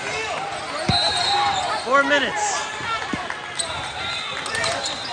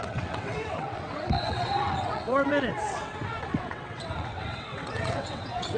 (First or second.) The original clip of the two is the first